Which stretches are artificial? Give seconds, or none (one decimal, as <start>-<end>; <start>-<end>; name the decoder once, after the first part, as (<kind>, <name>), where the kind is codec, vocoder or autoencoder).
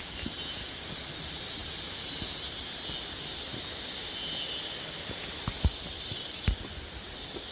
none